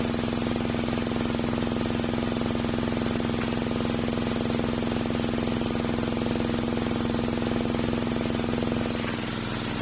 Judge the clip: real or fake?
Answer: real